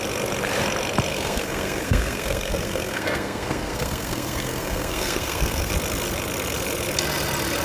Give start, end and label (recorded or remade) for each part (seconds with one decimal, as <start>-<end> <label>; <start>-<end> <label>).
0.0-1.1 recorded; 1.1-5.7 remade; 5.7-7.6 recorded